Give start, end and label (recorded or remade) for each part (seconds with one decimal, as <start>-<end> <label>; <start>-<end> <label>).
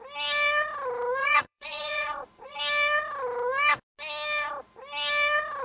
0.0-1.2 recorded; 1.2-2.6 remade; 2.6-5.6 recorded